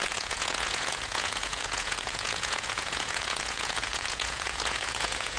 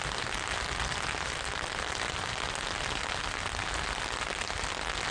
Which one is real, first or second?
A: second